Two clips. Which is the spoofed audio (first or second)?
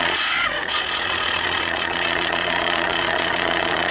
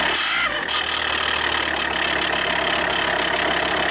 first